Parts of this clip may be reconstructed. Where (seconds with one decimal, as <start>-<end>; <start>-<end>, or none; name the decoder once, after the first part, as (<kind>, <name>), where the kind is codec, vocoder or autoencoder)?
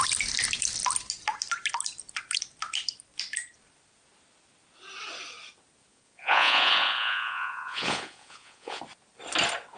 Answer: 5.9-8.8 (vocoder, Vocos)